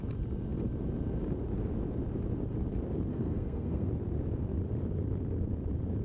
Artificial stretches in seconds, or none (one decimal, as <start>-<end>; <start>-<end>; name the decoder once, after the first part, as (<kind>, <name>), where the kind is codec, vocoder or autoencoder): 3.1-3.9 (codec, SNAC)